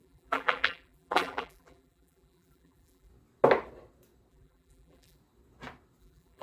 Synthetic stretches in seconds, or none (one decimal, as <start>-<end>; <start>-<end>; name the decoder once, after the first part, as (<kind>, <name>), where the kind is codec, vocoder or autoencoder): 0.0-3.1 (vocoder, BigVGAN v2); 4.3-5.2; 6.0-6.4